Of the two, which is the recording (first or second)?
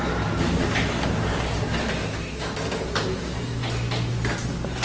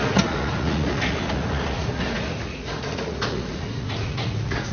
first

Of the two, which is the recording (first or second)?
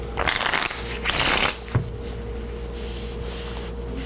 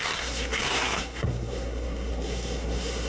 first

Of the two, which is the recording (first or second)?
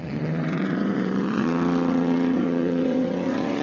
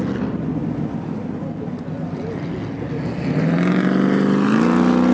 second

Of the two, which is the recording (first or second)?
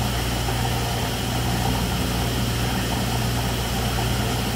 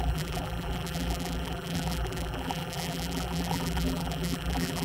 first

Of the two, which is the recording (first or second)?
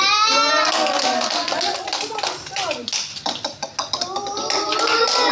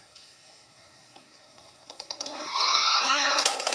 first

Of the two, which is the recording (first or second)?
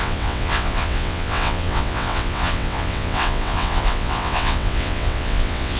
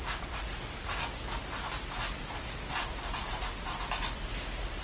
second